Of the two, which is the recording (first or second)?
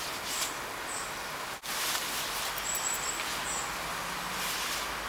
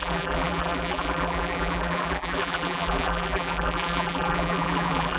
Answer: first